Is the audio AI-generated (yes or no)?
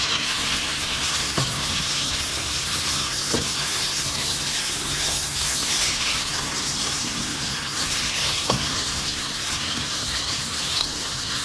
yes